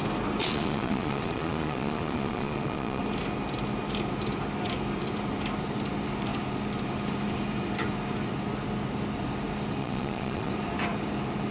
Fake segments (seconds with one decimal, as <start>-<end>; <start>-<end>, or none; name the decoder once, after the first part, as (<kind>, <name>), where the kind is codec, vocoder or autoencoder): 0.4-3.0 (vocoder, Vocos); 9.8-10.5